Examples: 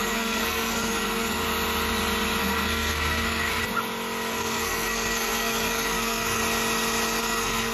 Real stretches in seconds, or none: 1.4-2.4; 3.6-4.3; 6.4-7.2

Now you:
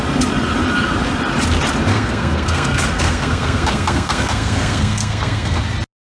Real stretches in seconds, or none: 0.0-1.9; 5.6-6.1

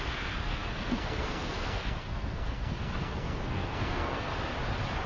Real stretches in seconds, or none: 4.3-5.1

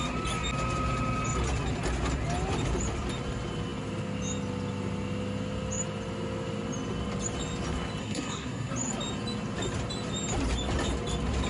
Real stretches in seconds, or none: 0.0-8.0; 8.7-11.5

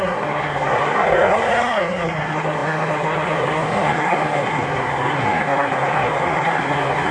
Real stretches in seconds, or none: none

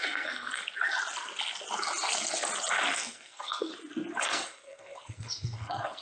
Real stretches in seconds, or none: 0.6-3.0; 3.7-4.2

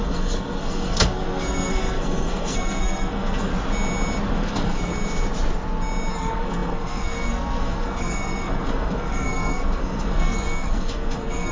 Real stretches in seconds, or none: 3.5-4.3; 4.9-6.1